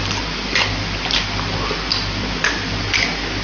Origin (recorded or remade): recorded